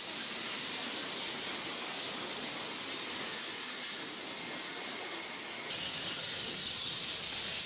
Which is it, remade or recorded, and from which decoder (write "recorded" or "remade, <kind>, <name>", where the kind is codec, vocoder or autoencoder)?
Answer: recorded